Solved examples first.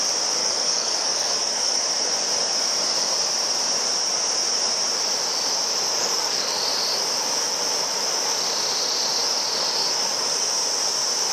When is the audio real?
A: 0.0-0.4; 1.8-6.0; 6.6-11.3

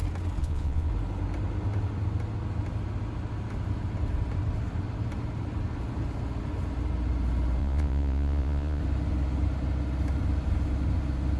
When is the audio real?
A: 0.0-0.4; 0.9-7.6; 8.8-11.4

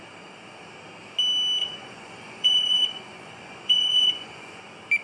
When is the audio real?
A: 0.0-1.6; 4.6-5.0

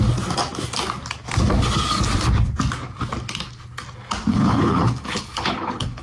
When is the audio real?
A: 0.0-4.3